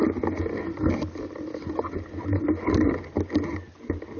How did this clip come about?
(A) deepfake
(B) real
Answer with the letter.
B